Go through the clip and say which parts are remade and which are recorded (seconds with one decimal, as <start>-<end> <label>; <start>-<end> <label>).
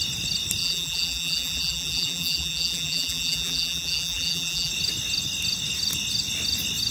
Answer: 0.0-0.6 recorded; 0.6-4.7 remade; 4.7-6.9 recorded